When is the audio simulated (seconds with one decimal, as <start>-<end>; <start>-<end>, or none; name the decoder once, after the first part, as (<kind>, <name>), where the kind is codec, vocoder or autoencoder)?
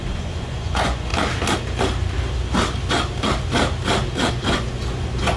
0.0-1.1 (vocoder, Vocos); 4.3-5.4